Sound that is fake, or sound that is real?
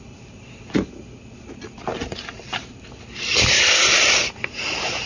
real